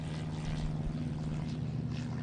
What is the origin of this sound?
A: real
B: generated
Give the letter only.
A